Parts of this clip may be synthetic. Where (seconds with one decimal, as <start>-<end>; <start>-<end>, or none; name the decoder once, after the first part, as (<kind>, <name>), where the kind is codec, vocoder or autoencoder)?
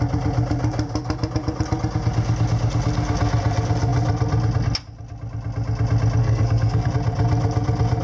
6.2-6.9 (codec, SNAC)